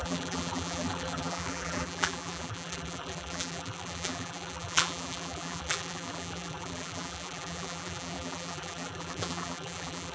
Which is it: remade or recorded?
remade